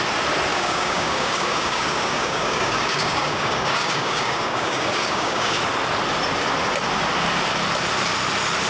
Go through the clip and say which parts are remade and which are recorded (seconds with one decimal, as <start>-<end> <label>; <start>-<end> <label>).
0.0-0.5 recorded; 0.5-5.6 remade; 5.6-8.7 recorded